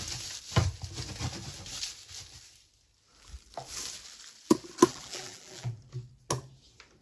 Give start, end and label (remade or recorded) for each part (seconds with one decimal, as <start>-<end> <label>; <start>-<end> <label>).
0.0-4.9 recorded; 4.9-5.8 remade; 5.8-7.0 recorded